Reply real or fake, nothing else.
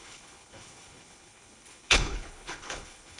fake